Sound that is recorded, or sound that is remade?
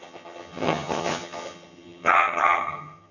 remade